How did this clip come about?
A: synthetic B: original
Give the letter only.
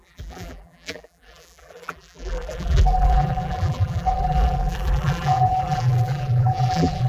A